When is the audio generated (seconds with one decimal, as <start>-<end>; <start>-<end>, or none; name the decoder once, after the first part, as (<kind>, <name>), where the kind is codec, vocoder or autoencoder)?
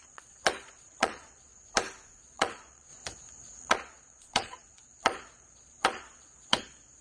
0.0-1.5 (vocoder, Vocos); 2.2-7.0